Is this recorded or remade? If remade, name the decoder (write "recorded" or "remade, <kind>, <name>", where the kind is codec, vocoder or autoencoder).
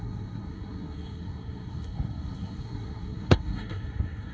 remade, codec, SNAC